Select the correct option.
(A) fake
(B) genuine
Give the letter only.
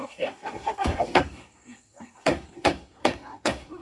A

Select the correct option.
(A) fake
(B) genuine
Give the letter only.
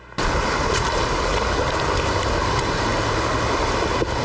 B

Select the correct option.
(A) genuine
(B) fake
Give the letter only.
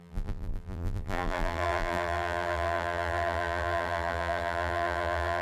B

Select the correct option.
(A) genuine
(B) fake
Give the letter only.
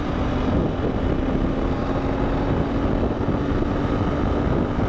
A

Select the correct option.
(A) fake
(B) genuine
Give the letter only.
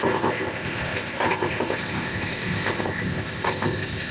A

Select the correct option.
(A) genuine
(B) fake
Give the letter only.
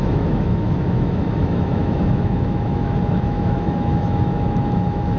B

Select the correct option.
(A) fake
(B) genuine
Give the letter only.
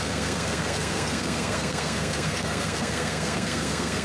A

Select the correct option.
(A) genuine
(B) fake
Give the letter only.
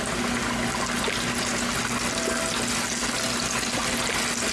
A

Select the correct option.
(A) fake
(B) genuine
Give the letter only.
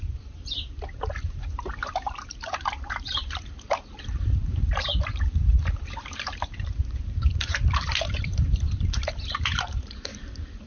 A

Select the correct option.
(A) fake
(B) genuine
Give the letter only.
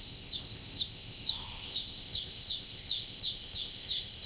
A